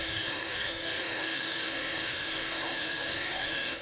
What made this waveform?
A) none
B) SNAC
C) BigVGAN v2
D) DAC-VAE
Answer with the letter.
D